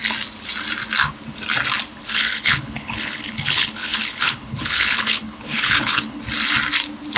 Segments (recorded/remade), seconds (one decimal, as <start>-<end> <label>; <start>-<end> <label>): 0.0-1.9 recorded; 1.9-6.2 remade; 6.2-7.2 recorded